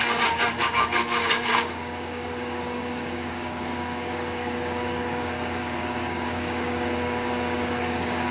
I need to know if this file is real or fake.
fake